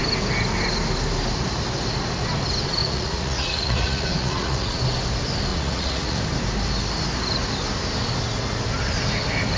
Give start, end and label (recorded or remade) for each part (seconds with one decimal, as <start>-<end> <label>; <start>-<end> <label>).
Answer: 0.0-2.8 recorded; 2.8-4.8 remade; 4.8-5.5 recorded; 5.5-6.2 remade; 6.2-9.6 recorded